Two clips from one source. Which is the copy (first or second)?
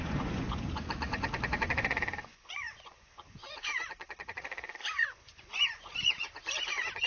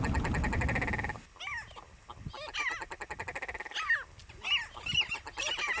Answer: first